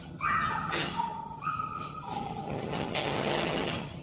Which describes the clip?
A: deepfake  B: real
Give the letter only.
A